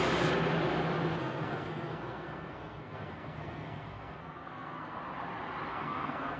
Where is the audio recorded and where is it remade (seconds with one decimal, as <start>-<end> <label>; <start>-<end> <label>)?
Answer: 0.0-1.2 recorded; 1.2-5.0 remade; 5.0-5.7 recorded; 5.7-6.4 remade